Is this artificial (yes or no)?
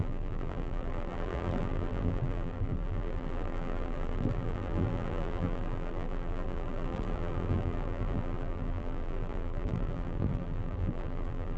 yes